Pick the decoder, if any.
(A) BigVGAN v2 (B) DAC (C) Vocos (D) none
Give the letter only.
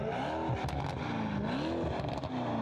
D